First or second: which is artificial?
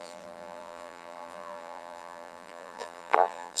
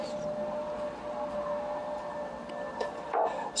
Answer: first